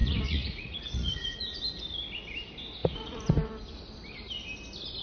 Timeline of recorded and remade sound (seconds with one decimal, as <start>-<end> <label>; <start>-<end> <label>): 0.0-1.6 remade; 1.6-2.8 recorded; 2.8-3.3 remade; 3.3-5.0 recorded